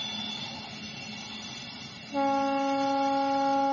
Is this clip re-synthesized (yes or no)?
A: no